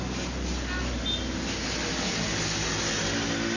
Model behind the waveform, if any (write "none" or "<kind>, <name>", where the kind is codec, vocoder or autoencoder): none